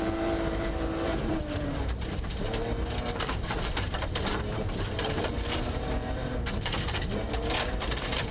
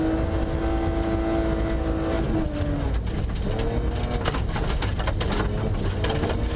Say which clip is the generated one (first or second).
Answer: first